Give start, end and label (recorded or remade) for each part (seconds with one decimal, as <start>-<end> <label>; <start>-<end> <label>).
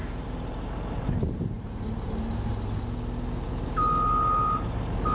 0.0-2.5 remade; 2.5-5.1 recorded